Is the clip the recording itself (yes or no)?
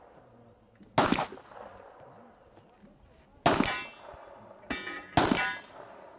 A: yes